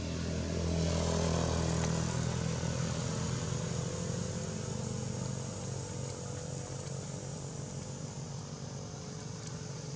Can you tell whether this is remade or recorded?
recorded